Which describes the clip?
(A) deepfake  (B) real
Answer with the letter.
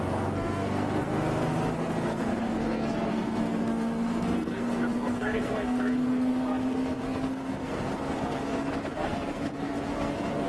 A